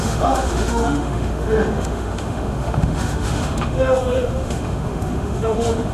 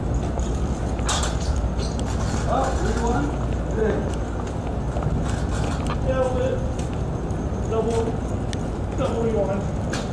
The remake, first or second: first